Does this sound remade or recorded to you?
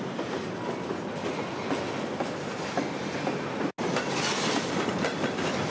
recorded